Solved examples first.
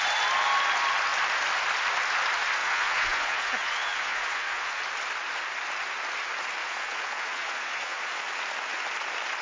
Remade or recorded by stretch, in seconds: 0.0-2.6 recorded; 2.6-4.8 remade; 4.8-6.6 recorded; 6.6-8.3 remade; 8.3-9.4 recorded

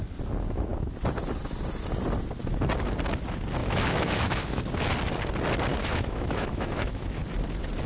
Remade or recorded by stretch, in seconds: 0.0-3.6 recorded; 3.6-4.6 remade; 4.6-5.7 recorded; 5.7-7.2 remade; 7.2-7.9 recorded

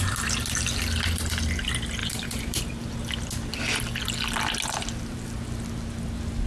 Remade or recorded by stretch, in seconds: 0.0-2.0 recorded; 2.0-2.6 remade; 2.6-6.5 recorded

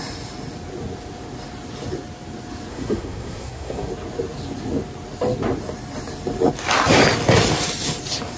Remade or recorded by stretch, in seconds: 0.0-2.7 recorded; 2.7-3.9 remade; 3.9-8.4 recorded

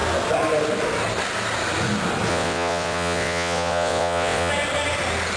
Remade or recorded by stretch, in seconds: 0.0-2.3 recorded; 2.3-4.5 remade; 4.5-5.4 recorded

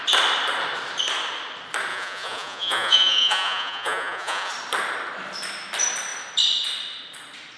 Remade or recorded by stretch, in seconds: 0.0-1.9 recorded; 1.9-4.5 remade; 4.5-7.6 recorded

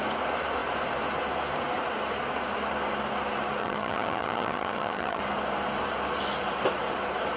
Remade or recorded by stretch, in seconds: 0.0-3.6 recorded; 3.6-5.2 remade; 5.2-7.4 recorded

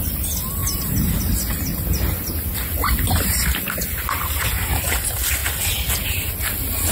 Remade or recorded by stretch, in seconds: 0.0-0.6 recorded; 0.6-1.3 remade; 1.3-6.9 recorded